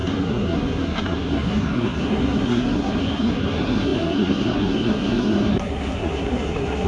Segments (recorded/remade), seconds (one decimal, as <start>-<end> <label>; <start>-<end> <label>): 0.0-6.9 remade